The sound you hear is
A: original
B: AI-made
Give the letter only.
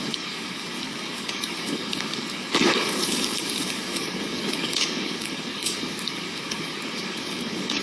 B